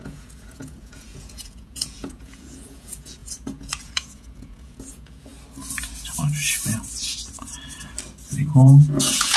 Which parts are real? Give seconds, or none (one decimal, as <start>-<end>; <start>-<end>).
5.3-8.5